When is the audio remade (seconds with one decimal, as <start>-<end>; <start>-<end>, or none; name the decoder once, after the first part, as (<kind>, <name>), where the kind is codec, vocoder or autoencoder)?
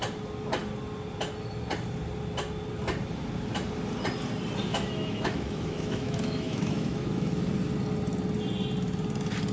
4.7-7.5 (autoencoder, DAC-VAE)